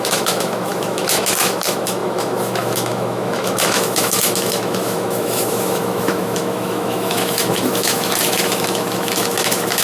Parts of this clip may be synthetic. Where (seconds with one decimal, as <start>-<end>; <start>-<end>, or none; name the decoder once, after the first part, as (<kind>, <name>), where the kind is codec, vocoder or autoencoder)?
0.0-9.8 (autoencoder, DAC-VAE)

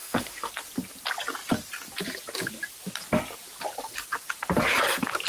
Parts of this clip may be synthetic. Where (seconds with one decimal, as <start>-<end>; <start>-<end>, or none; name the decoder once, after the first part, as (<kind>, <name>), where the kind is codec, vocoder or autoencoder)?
0.0-0.5 (autoencoder, DAC-VAE)